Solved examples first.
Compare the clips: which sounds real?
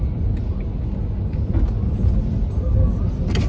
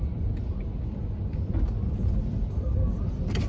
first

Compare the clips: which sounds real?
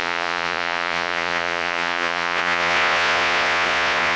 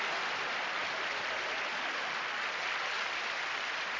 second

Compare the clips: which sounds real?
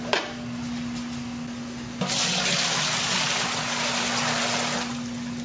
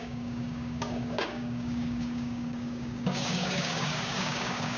first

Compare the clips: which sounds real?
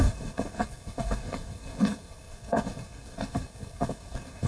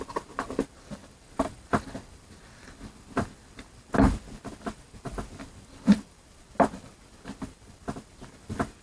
second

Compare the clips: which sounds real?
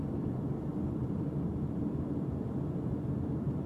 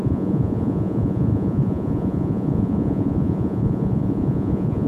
first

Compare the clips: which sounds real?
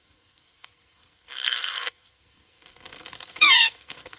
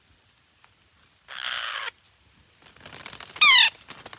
second